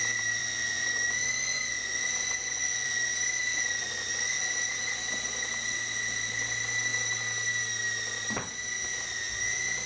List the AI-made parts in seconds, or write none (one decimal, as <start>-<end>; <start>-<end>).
0.4-3.1; 3.5-4.5